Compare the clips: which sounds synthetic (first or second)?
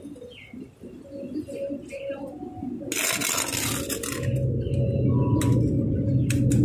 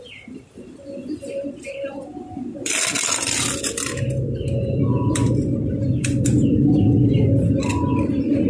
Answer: second